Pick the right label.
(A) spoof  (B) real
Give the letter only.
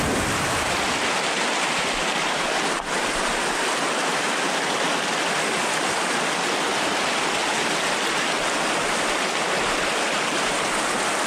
B